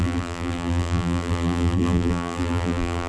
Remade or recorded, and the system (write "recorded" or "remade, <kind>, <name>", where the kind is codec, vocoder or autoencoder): remade, vocoder, BigVGAN v2